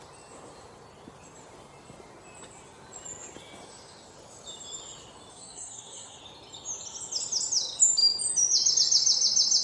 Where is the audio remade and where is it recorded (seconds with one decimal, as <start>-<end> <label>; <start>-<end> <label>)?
0.0-5.3 recorded; 5.3-6.2 remade; 6.2-9.6 recorded